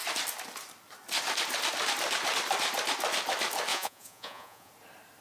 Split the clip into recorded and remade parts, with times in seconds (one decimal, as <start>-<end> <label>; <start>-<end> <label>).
0.0-3.7 recorded; 3.7-4.7 remade; 4.7-5.2 recorded